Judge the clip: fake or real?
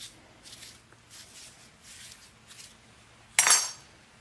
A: real